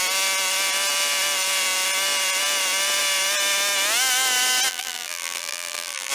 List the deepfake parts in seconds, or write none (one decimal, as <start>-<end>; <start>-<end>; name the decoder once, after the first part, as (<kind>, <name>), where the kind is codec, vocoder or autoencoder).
4.7-6.1 (vocoder, BigVGAN v2)